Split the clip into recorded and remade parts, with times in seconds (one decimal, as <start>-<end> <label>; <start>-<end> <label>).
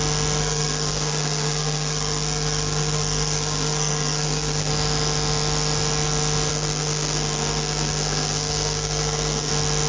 0.0-0.4 recorded; 0.4-4.7 remade; 4.7-6.5 recorded; 6.5-9.5 remade; 9.5-9.9 recorded